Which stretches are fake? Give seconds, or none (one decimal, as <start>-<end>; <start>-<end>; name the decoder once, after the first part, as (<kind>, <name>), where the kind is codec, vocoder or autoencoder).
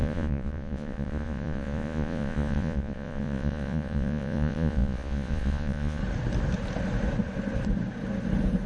0.0-6.0 (vocoder, Vocos)